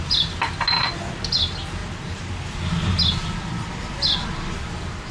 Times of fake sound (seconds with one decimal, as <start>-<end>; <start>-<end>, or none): none